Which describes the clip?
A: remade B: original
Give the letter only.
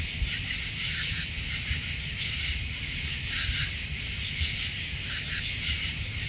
B